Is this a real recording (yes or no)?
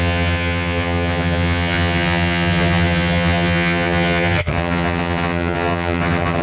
no